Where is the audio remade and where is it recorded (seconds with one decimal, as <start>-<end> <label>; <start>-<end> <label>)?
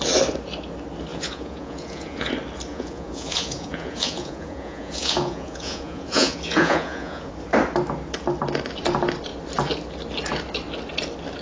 0.0-1.1 recorded; 1.1-2.3 remade; 2.3-2.7 recorded; 2.7-7.3 remade; 7.3-11.4 recorded